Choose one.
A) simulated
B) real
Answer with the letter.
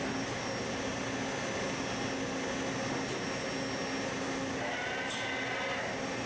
B